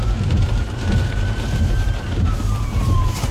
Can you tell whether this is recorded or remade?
remade